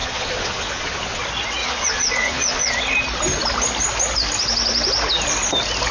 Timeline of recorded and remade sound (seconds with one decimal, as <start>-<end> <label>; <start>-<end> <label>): 0.0-1.2 remade; 1.2-1.6 recorded; 1.6-2.7 remade; 2.7-5.9 recorded